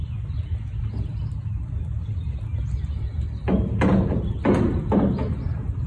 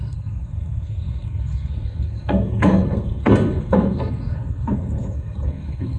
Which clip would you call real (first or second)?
first